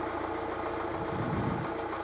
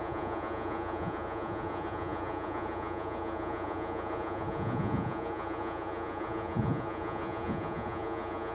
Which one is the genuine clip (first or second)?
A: first